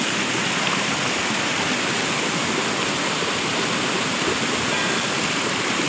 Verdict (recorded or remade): recorded